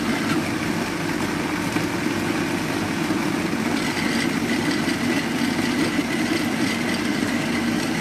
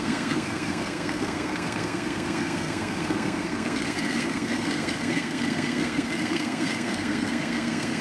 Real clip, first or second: first